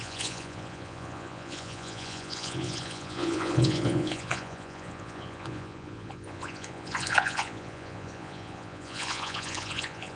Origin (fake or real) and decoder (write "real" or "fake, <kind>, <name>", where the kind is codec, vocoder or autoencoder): fake, vocoder, Vocos